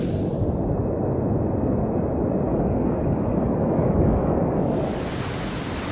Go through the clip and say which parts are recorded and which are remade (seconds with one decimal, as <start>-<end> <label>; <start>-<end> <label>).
0.0-2.5 recorded; 2.5-5.0 remade; 5.0-5.9 recorded